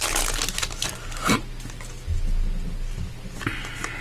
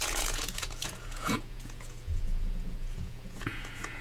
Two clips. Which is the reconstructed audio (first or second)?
second